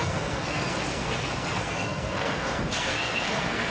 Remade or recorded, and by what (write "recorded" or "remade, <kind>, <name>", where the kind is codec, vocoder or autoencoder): remade, codec, SNAC